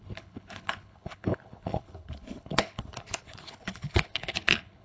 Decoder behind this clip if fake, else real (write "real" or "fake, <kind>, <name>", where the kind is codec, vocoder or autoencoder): fake, codec, HILCodec